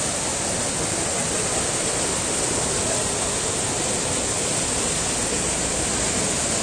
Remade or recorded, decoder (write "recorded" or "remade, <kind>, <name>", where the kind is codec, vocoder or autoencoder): recorded